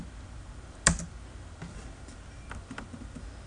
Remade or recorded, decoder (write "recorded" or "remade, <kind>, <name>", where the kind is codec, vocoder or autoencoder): recorded